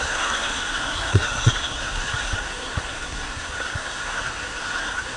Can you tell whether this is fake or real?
fake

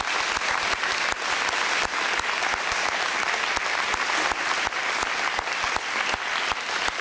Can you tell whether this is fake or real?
real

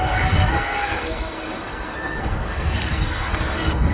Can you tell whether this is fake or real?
fake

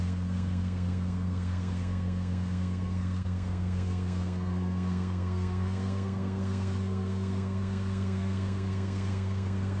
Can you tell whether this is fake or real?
fake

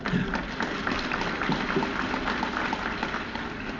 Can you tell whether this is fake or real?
real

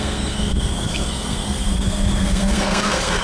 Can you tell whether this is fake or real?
fake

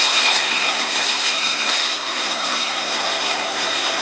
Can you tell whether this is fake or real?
fake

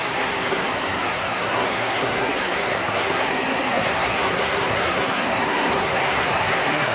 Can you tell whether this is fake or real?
fake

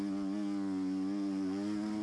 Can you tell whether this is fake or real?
real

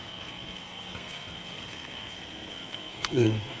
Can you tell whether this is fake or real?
fake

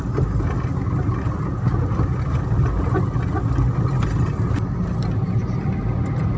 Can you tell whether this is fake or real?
real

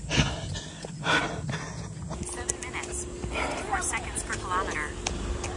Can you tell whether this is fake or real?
real